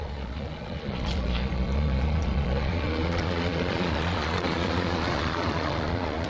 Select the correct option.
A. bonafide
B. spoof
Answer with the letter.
B